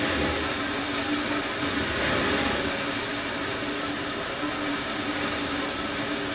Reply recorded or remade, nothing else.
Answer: recorded